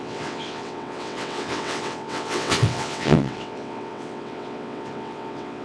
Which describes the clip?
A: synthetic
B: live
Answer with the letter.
A